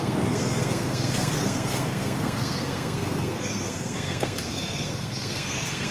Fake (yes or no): yes